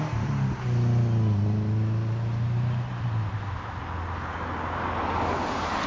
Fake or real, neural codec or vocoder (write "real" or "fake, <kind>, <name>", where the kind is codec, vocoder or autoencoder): real